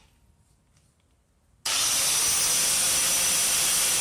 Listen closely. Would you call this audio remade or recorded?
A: recorded